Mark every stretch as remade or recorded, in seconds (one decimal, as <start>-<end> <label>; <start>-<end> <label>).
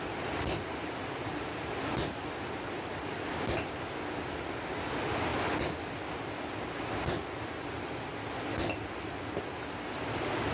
0.0-10.5 recorded